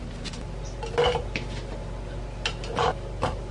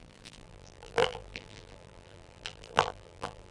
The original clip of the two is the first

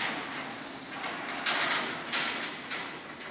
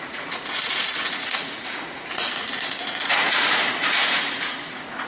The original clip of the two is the first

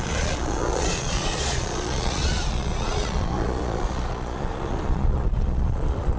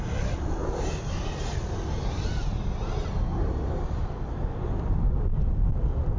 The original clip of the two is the second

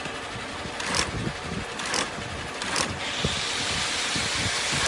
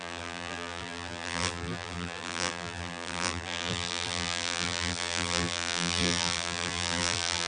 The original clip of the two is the first